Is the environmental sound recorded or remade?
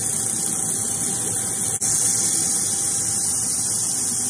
recorded